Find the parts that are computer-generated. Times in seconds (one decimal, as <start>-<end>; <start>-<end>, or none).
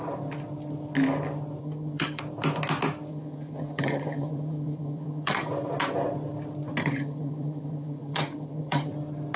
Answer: 1.6-2.2; 3.1-5.5; 6.8-8.9